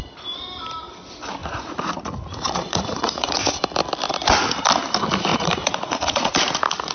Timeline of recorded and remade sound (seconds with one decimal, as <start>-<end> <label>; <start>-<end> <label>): 0.0-1.4 recorded; 1.4-3.6 remade; 3.6-5.3 recorded; 5.3-6.3 remade; 6.3-6.9 recorded